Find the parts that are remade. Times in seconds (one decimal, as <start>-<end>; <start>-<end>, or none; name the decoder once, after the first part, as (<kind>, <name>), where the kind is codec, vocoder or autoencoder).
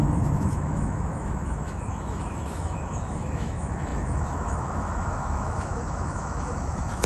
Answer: 0.0-7.1 (autoencoder, DAC-VAE)